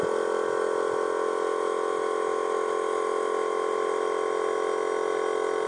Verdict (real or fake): real